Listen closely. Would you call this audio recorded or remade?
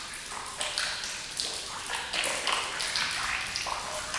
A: recorded